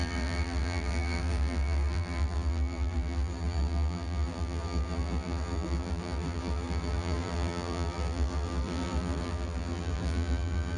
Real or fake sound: fake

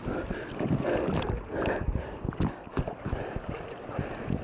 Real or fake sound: real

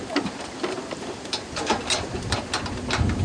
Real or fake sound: fake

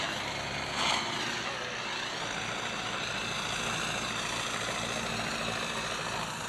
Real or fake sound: real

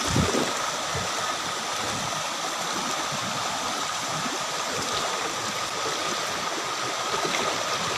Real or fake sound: real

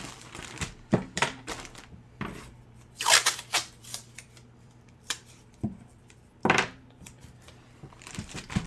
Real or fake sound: fake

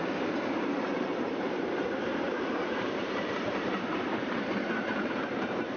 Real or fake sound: fake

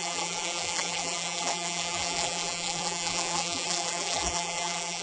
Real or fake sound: fake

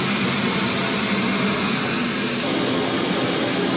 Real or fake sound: real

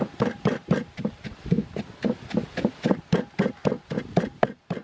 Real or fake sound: fake